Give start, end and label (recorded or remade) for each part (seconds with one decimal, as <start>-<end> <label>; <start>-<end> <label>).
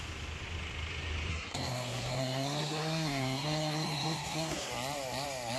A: 0.0-1.3 recorded; 1.3-4.7 remade; 4.7-5.6 recorded